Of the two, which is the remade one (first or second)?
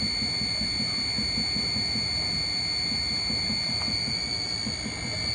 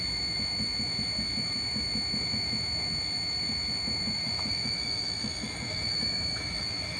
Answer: second